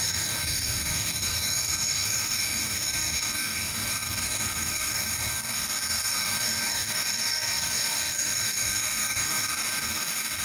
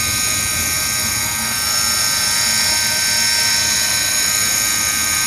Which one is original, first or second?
second